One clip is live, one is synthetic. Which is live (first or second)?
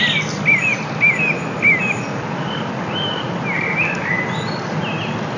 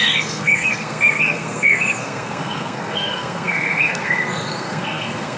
first